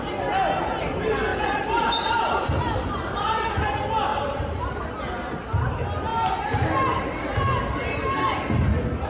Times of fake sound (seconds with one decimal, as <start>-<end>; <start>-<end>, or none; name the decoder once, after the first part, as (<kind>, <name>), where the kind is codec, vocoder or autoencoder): 1.3-3.5 (vocoder, BigVGAN v2); 4.1-4.8